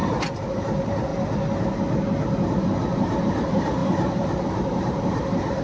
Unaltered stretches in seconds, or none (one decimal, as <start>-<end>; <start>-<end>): 0.0-0.5; 1.1-3.2